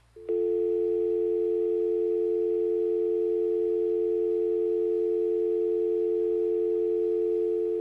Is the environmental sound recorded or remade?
recorded